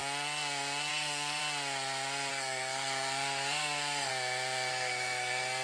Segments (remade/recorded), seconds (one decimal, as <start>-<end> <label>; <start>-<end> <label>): 0.0-0.9 recorded; 0.9-1.4 remade; 1.4-2.3 recorded; 2.3-4.1 remade; 4.1-4.7 recorded; 4.7-5.6 remade